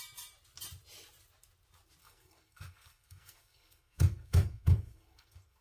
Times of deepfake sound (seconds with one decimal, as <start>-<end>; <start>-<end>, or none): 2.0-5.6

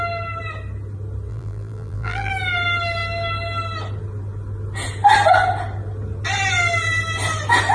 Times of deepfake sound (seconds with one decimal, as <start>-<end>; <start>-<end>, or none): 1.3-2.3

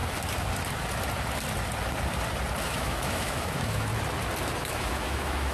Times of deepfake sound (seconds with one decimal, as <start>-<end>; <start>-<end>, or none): 2.6-3.9; 4.6-5.5

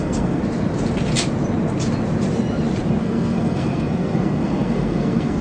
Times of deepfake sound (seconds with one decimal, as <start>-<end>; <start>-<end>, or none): 0.0-0.4; 3.0-5.4